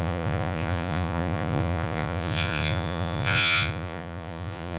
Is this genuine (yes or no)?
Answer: no